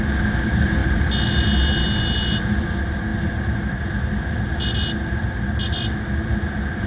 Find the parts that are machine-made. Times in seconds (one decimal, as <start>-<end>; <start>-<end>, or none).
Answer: none